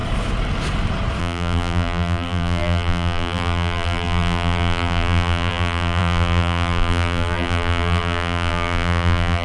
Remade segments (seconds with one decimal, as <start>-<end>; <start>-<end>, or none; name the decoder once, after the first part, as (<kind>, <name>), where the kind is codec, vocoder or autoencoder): 1.2-9.4 (vocoder, BigVGAN v2)